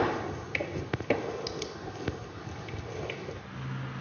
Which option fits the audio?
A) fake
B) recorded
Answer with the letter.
B